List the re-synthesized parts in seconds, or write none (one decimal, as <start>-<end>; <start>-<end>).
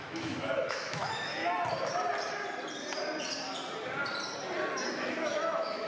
0.0-1.4; 4.9-5.9